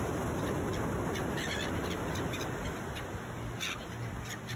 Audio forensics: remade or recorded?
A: recorded